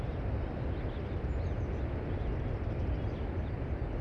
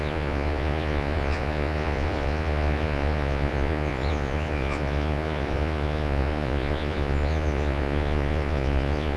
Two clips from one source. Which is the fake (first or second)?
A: second